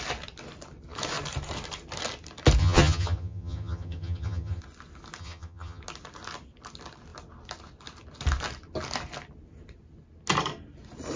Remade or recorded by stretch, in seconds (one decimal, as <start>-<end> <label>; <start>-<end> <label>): 0.0-2.6 recorded; 2.6-4.6 remade; 4.6-5.2 recorded; 5.2-5.8 remade; 5.8-11.2 recorded